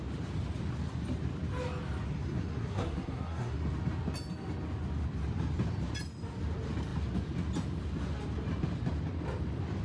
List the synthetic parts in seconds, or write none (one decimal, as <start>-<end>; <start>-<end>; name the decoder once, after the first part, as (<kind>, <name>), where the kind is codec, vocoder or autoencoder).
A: 2.1-3.6 (codec, SNAC)